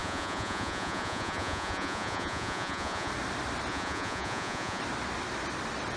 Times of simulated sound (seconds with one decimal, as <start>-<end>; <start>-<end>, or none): 0.0-3.1; 3.7-4.8